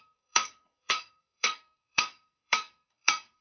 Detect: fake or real fake